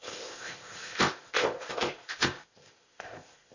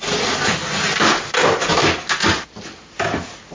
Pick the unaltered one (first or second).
second